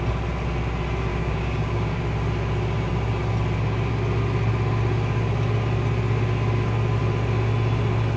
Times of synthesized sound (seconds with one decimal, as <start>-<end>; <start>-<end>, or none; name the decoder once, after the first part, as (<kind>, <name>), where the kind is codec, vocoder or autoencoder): 1.1-2.0 (codec, DAC)